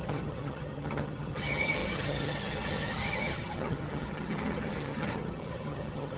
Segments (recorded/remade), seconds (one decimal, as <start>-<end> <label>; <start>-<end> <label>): 0.0-6.2 remade

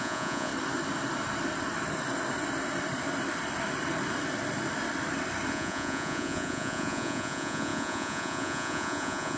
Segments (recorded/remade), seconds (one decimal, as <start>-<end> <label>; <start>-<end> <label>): 0.0-0.5 remade; 0.5-5.5 recorded; 5.5-9.4 remade

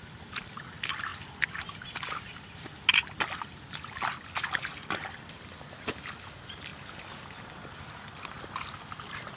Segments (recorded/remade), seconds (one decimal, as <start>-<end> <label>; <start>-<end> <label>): 0.0-9.4 recorded

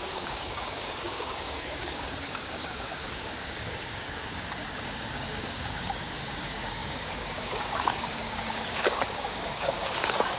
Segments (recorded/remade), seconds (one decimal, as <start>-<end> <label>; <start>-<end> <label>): 0.0-10.4 remade

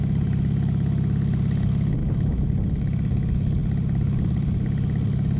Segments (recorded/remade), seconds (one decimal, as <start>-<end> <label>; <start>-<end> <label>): 0.0-2.0 recorded; 2.0-2.5 remade; 2.5-5.4 recorded